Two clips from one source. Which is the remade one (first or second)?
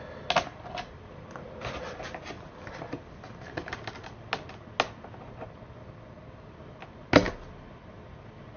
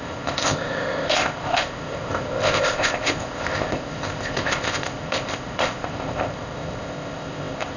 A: second